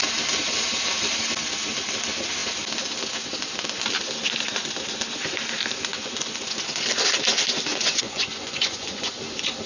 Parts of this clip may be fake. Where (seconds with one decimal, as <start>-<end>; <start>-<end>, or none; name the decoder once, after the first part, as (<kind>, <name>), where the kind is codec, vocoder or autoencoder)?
5.9-6.6 (vocoder, Vocos); 7.7-9.1